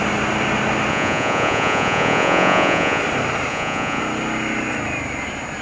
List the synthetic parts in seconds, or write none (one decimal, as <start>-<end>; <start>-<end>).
0.9-3.0; 3.5-4.0